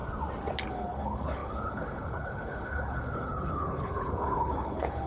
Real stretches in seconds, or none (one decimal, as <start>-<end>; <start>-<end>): 0.0-0.7